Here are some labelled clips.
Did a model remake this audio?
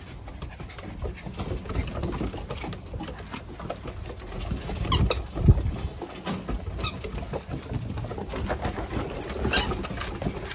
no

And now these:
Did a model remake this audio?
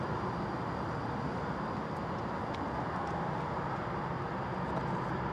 no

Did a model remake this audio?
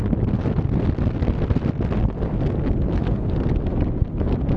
no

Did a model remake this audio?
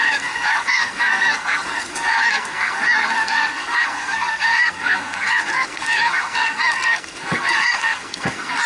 yes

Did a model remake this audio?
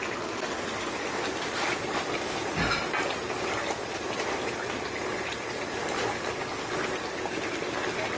no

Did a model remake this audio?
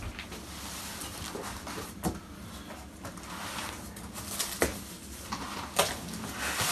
no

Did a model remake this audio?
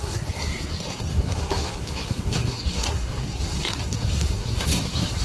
yes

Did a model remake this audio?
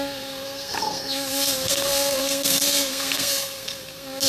yes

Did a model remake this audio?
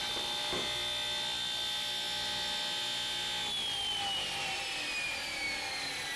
no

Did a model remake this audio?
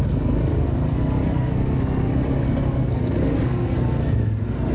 yes